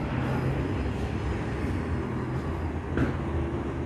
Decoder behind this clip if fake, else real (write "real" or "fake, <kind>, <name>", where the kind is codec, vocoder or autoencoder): real